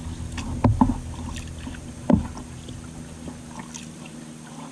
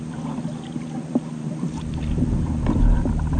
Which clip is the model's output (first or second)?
second